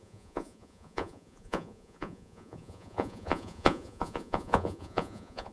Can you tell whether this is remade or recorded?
remade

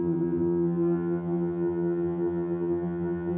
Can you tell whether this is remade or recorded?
remade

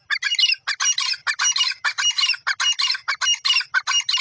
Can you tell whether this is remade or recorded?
recorded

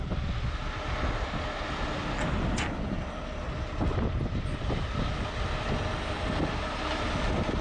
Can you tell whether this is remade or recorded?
recorded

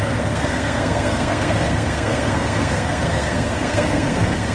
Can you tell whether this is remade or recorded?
remade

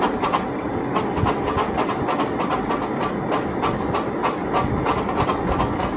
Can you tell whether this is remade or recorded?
recorded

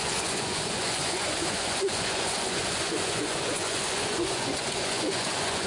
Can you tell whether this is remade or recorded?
remade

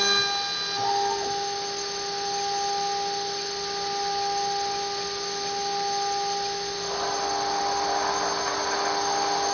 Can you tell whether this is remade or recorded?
recorded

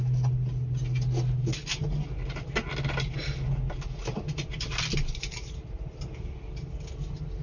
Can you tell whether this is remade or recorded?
recorded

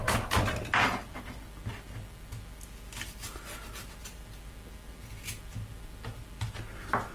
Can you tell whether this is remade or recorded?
recorded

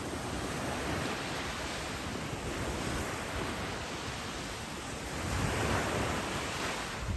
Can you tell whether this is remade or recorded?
recorded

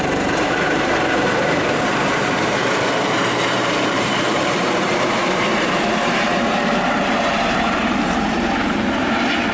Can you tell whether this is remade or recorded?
remade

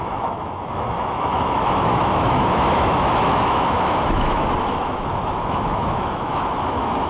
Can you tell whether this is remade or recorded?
remade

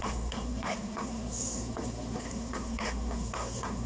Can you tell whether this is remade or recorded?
remade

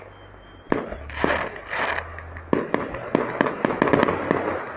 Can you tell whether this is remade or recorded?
recorded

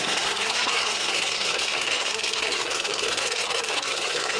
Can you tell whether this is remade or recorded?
remade